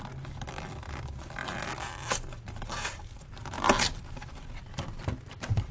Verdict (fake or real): fake